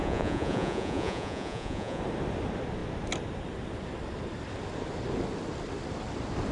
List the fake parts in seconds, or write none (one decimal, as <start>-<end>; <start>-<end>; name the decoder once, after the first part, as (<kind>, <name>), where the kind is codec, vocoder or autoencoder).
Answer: 0.0-2.0 (vocoder, Vocos)